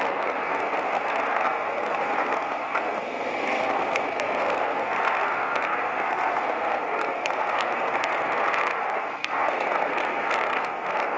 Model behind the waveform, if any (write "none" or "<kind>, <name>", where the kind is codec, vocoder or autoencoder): codec, SNAC